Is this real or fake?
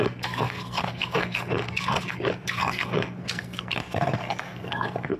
fake